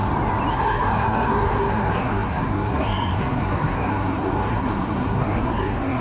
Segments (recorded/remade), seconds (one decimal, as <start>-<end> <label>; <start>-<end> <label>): 0.0-0.5 recorded; 0.5-6.0 remade